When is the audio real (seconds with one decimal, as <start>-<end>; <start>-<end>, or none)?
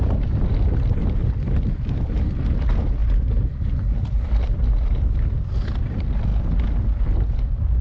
6.3-7.3